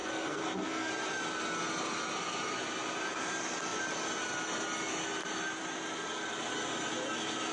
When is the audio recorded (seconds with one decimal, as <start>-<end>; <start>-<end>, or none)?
0.9-7.5